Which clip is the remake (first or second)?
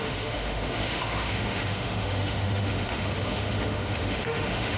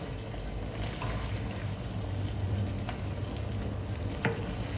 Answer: first